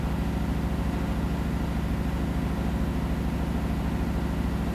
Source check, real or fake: real